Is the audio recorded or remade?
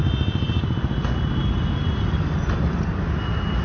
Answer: recorded